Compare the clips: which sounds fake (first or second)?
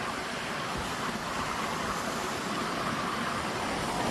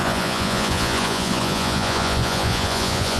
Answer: second